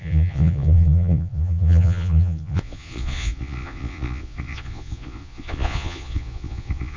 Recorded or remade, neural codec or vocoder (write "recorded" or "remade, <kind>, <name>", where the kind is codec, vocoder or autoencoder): remade, vocoder, Vocos